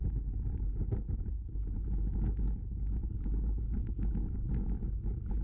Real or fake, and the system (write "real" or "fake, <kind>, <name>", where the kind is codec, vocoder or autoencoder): real